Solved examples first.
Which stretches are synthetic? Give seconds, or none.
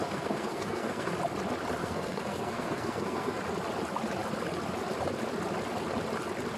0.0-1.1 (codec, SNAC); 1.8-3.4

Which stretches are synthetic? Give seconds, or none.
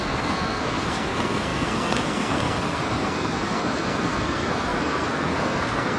0.0-6.0 (codec, SNAC)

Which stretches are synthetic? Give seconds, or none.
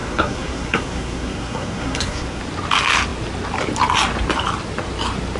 0.0-2.4 (codec, SNAC)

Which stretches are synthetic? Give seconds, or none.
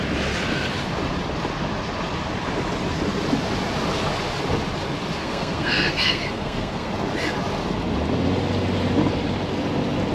5.2-6.9 (codec, SNAC)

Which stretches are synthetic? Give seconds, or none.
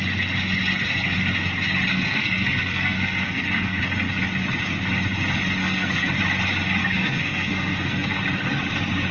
1.9-3.8 (codec, SNAC); 5.6-6.2; 6.8-8.2